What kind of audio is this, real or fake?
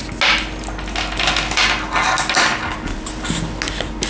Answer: real